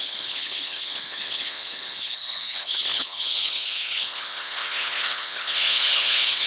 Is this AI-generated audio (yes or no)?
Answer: yes